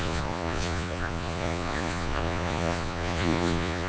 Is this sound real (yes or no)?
no